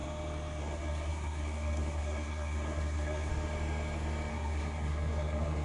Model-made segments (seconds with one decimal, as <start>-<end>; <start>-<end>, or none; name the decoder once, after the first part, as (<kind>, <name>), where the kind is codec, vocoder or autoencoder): 0.6-3.3 (codec, SNAC); 4.3-5.6